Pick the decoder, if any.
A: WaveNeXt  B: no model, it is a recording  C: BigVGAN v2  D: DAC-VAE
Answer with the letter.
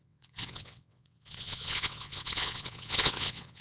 A